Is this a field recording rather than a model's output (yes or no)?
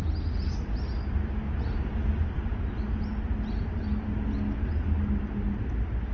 yes